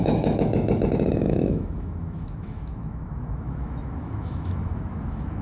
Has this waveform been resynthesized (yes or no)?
yes